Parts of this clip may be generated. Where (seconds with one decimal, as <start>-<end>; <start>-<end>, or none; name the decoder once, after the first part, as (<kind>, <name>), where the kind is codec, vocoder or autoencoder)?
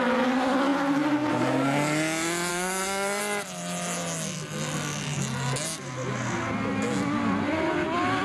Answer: 2.5-3.2 (codec, SNAC)